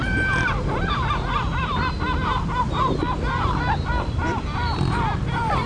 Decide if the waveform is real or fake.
real